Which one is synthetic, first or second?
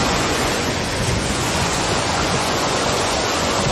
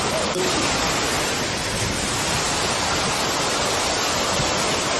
first